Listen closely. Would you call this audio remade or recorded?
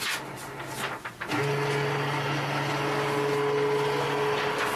recorded